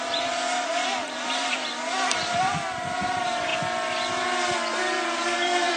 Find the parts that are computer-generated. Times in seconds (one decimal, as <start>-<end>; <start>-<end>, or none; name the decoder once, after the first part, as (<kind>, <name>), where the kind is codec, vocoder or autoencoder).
0.0-0.9 (vocoder, BigVGAN v2); 2.4-3.5; 5.2-5.8

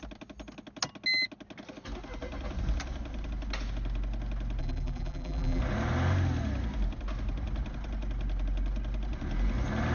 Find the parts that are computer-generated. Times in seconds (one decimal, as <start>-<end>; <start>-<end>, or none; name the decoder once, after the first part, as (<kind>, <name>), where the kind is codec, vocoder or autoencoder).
4.6-5.6 (vocoder, BigVGAN v2)

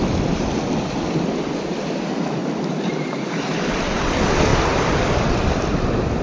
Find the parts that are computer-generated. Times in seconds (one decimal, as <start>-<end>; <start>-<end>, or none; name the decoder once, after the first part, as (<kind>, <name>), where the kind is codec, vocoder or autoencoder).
2.4-3.3 (vocoder, BigVGAN v2); 4.5-5.5

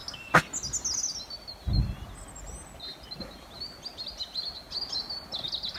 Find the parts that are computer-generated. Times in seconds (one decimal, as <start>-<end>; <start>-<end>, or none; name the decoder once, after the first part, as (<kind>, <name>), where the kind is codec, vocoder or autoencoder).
none

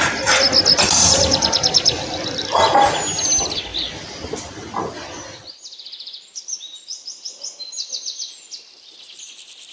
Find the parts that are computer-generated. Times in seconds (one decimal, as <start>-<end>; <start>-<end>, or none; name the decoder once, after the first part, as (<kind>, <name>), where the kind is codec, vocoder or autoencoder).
3.7-7.6 (vocoder, BigVGAN v2)

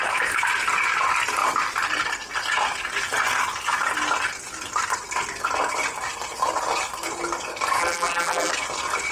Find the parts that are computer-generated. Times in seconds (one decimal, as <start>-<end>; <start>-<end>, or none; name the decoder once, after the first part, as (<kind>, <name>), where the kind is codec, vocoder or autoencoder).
7.8-8.5 (vocoder, BigVGAN v2)

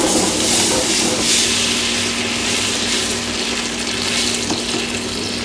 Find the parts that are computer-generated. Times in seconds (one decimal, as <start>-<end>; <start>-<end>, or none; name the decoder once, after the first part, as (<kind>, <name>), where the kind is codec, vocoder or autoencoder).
2.4-3.2 (vocoder, BigVGAN v2)

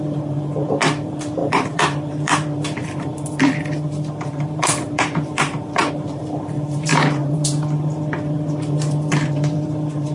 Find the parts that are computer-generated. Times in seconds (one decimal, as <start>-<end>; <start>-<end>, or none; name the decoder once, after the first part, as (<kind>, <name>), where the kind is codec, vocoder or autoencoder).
0.0-10.1 (vocoder, BigVGAN v2)